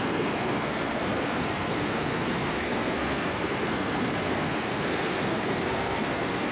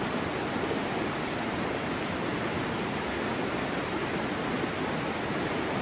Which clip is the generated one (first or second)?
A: first